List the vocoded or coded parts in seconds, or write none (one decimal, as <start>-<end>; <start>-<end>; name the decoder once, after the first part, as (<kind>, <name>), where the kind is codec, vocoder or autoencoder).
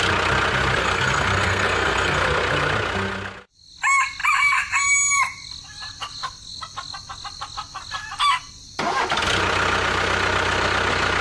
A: 0.8-2.2 (codec, SNAC)